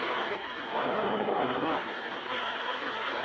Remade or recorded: remade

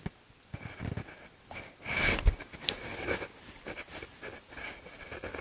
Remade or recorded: recorded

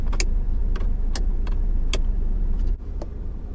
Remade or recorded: recorded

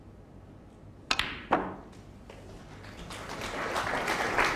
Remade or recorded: recorded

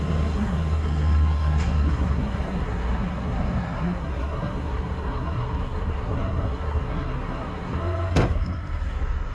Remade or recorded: remade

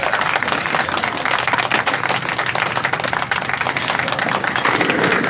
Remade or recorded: recorded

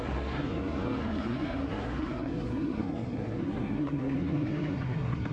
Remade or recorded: remade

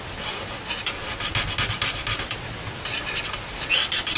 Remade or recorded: recorded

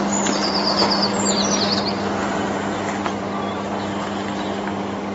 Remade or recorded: recorded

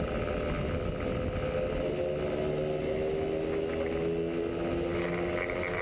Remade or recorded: recorded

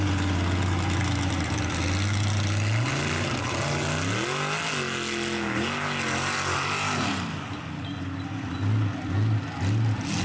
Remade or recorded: recorded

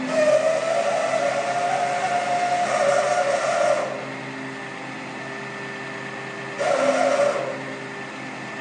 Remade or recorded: recorded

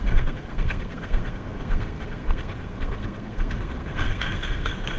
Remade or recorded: remade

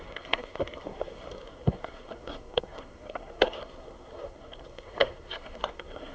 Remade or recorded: remade